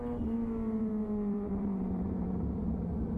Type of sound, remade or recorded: remade